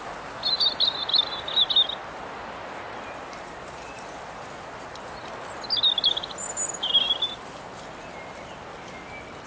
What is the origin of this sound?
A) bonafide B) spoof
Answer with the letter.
A